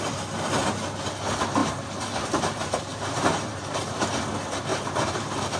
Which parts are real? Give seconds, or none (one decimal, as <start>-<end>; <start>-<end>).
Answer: 0.0-1.6; 4.0-4.7